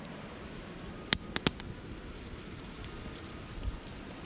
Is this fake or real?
real